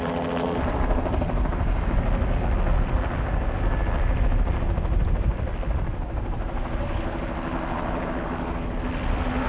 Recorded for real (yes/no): yes